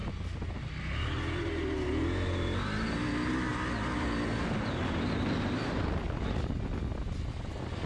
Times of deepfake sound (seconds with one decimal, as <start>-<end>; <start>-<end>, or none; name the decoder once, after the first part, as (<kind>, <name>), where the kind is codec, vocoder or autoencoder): none